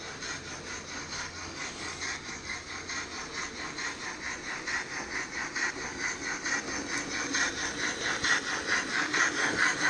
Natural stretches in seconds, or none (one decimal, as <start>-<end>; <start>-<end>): 0.0-1.0; 2.7-8.9